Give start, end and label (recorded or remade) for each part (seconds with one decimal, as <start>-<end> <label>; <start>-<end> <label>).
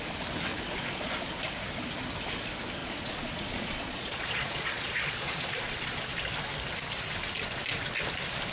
0.0-0.5 recorded; 0.5-1.4 remade; 1.4-2.8 recorded; 2.8-5.5 remade; 5.5-8.5 recorded